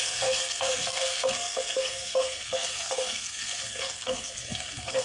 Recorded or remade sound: remade